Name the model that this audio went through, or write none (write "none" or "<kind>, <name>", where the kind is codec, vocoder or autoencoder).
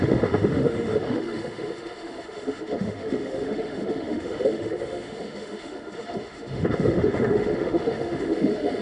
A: autoencoder, DAC-VAE